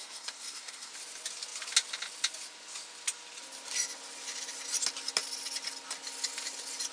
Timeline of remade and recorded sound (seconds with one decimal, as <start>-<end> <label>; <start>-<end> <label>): 0.0-0.9 remade; 0.9-6.9 recorded

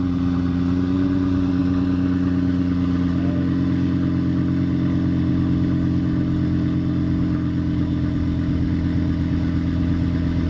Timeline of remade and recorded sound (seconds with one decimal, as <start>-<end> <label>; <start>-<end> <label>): 0.0-10.5 recorded

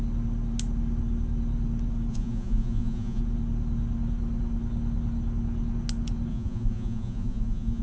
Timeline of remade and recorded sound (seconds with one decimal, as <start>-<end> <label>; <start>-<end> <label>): 0.0-2.1 recorded; 2.1-3.2 remade; 3.2-6.3 recorded; 6.3-7.8 remade

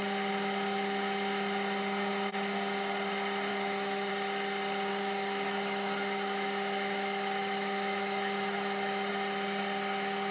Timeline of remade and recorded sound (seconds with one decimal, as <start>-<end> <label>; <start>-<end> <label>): 0.0-3.5 recorded; 3.5-4.1 remade; 4.1-4.9 recorded; 4.9-9.1 remade; 9.1-10.3 recorded

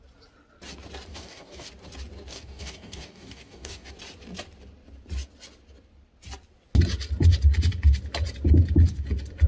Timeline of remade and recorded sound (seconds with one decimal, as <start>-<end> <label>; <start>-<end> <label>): 0.0-1.1 recorded; 1.1-1.7 remade; 1.7-2.3 recorded; 2.3-3.9 remade; 3.9-9.5 recorded

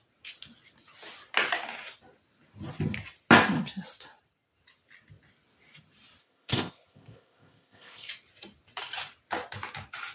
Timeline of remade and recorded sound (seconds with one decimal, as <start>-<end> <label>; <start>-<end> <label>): 0.0-6.2 recorded; 6.2-8.1 remade; 8.1-10.1 recorded

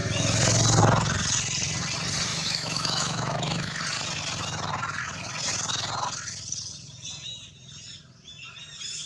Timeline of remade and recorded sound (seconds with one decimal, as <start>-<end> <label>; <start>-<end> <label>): 0.0-2.3 recorded; 2.3-3.8 remade; 3.8-9.1 recorded

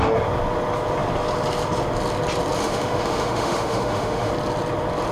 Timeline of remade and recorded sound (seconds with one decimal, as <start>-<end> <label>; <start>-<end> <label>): 0.0-2.6 recorded; 2.6-4.3 remade; 4.3-5.1 recorded